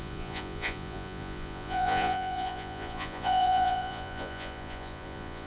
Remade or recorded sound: remade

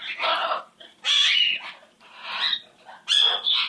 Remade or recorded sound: recorded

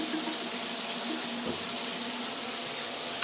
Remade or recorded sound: recorded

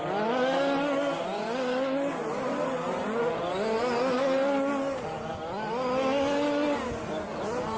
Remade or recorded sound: recorded